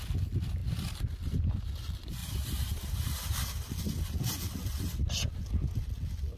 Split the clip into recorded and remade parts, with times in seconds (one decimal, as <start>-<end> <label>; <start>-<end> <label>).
0.0-0.6 recorded; 0.6-1.6 remade; 1.6-6.4 recorded